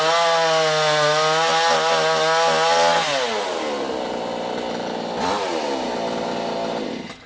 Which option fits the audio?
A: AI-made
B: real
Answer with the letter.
B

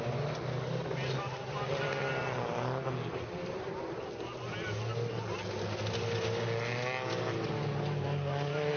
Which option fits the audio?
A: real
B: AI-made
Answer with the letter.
A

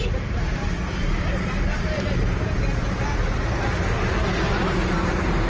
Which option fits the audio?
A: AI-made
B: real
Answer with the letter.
A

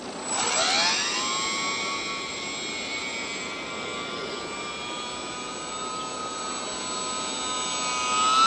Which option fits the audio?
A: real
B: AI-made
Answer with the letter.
A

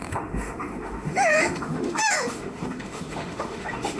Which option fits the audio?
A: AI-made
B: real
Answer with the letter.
A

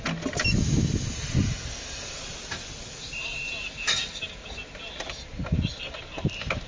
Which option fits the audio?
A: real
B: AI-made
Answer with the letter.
A